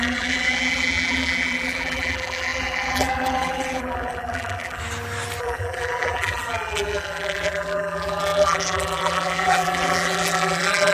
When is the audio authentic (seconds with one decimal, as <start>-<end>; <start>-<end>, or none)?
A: 4.8-5.4